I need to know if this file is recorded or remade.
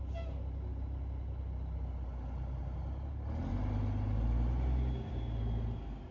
recorded